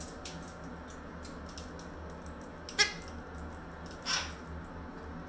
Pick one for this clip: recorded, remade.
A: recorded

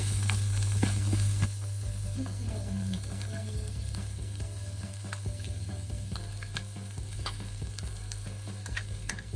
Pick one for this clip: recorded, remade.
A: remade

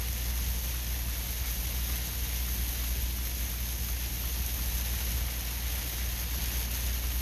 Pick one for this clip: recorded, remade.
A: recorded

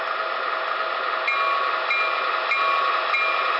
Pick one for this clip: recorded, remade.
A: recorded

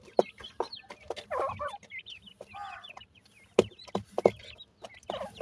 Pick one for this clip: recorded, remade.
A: recorded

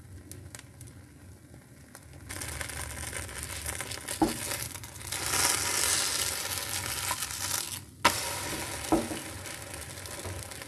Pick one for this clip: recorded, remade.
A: recorded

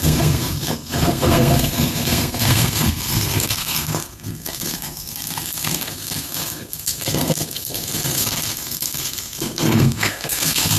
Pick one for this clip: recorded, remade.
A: remade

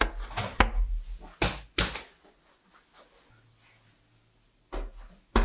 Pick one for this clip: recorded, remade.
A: recorded